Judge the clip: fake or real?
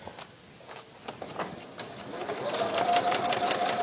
real